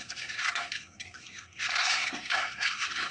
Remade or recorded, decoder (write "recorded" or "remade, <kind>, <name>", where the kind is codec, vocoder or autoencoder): remade, codec, SNAC